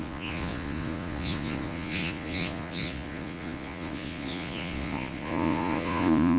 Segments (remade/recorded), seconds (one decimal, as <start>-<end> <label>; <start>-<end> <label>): 0.0-6.4 remade